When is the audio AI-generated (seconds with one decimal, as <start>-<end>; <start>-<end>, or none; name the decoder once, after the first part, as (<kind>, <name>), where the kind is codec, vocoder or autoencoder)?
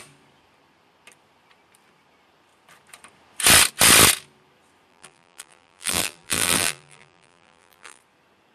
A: 4.9-8.0 (vocoder, BigVGAN v2)